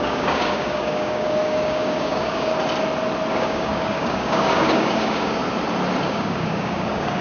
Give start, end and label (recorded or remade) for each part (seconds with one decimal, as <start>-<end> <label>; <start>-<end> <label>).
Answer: 0.0-2.5 remade; 2.5-3.3 recorded; 3.3-5.4 remade; 5.4-6.1 recorded; 6.1-7.2 remade